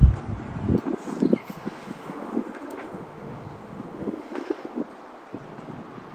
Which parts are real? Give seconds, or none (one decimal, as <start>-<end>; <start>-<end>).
0.0-1.4; 4.8-6.1